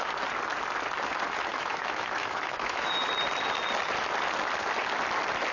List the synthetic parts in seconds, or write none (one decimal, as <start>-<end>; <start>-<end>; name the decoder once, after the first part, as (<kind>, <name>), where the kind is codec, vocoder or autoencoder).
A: 1.5-3.1 (autoencoder, DAC-VAE)